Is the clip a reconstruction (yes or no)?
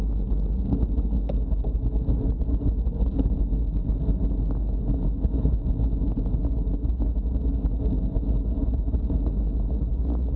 no